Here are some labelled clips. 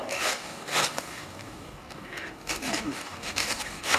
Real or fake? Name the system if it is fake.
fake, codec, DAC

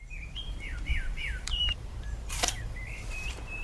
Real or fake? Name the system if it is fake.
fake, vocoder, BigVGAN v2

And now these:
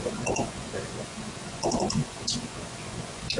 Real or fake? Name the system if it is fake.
fake, vocoder, Vocos